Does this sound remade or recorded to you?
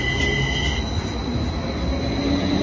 recorded